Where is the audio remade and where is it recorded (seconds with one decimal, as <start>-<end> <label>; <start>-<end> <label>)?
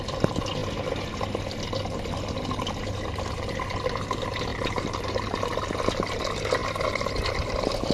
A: 0.0-4.5 recorded; 4.5-5.5 remade; 5.5-7.9 recorded